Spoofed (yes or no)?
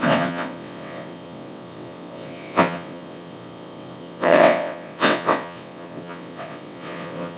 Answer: yes